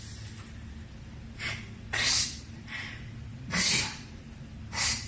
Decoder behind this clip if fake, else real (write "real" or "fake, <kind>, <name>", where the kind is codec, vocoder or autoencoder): real